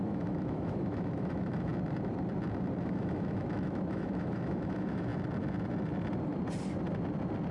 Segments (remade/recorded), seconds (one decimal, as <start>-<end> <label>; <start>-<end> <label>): 0.0-1.7 remade; 1.7-2.8 recorded; 2.8-5.1 remade; 5.1-7.5 recorded